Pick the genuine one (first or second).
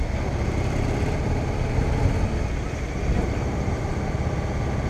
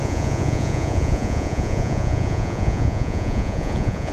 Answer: first